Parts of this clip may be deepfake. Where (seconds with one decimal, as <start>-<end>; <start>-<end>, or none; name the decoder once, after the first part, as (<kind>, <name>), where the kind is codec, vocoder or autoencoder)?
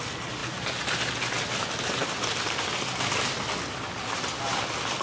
none